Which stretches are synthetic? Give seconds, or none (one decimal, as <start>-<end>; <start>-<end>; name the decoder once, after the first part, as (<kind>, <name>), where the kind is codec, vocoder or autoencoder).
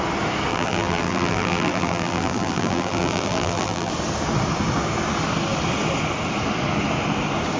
0.5-3.9 (vocoder, BigVGAN v2)